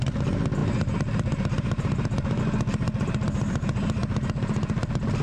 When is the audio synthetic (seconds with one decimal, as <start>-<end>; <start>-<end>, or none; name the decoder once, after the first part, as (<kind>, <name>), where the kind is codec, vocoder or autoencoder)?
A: 0.6-2.4 (vocoder, BigVGAN v2)